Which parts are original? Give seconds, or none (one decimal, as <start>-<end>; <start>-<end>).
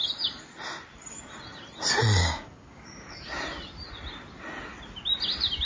0.0-2.2; 3.1-5.7